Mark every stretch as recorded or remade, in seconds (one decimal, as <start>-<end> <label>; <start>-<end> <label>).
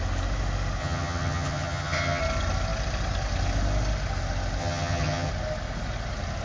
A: 0.0-0.8 recorded; 0.8-2.2 remade; 2.2-4.6 recorded; 4.6-5.3 remade; 5.3-6.4 recorded